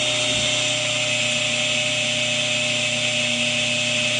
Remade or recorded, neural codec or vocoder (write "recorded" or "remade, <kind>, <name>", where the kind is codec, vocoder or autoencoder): recorded